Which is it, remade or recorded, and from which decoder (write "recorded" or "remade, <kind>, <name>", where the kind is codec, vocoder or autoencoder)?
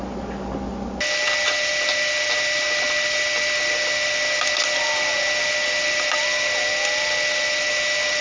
recorded